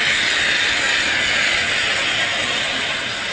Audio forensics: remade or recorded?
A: recorded